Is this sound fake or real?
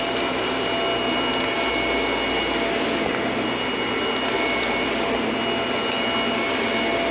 real